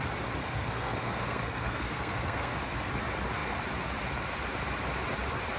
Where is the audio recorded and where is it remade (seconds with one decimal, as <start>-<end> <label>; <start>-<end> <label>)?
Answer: 0.0-0.4 recorded; 0.4-2.9 remade; 2.9-5.6 recorded